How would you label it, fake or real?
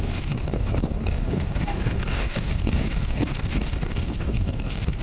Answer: fake